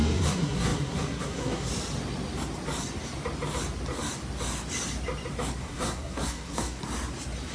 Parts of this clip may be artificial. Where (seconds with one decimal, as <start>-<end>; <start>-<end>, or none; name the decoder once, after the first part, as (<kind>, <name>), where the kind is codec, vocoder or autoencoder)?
0.0-1.7 (codec, SNAC); 5.6-6.8